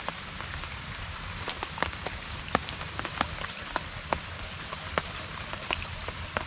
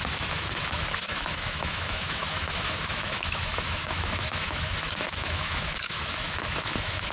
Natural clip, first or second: first